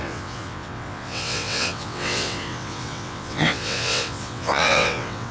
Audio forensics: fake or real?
fake